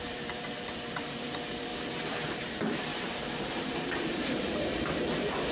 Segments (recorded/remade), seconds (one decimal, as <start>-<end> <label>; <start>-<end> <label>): 0.0-1.7 remade; 1.7-2.3 recorded; 2.3-5.5 remade